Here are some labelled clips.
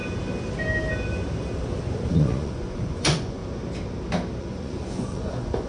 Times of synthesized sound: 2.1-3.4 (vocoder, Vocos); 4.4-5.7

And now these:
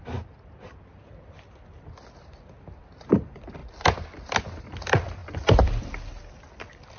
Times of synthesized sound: none

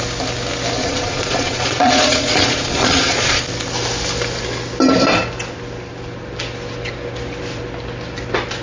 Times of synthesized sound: 0.8-3.4 (vocoder, Vocos)

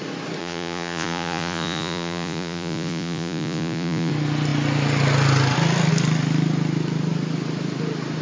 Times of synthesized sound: 0.4-4.1 (vocoder, Vocos)

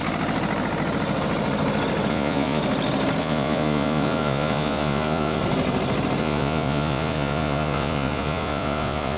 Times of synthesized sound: 2.1-2.6 (vocoder, Vocos); 3.2-5.4; 6.2-9.2

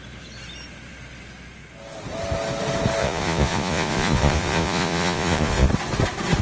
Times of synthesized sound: 3.0-5.7 (vocoder, Vocos)

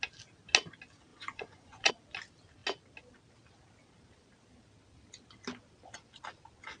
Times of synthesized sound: 1.1-1.9 (vocoder, Vocos)

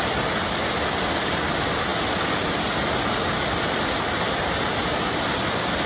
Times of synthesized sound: none